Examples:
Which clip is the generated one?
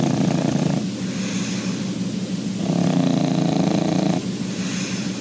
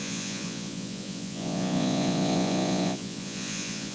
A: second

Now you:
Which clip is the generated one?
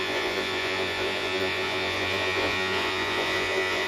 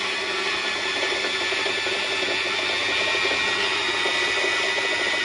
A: first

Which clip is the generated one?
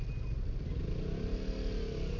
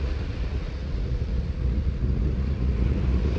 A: second